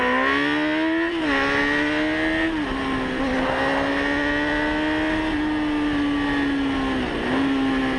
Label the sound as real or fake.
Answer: real